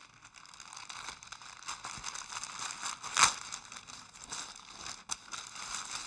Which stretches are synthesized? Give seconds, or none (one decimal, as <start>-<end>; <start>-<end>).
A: none